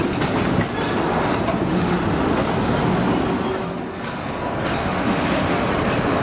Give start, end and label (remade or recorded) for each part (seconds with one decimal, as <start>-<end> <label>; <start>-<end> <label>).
0.0-1.7 recorded; 1.7-2.3 remade; 2.3-4.8 recorded; 4.8-5.7 remade; 5.7-6.2 recorded